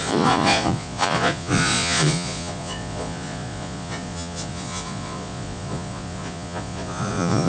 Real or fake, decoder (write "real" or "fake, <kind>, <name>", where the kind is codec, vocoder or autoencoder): fake, vocoder, Vocos